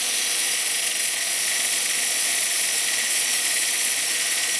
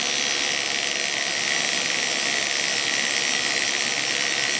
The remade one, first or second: first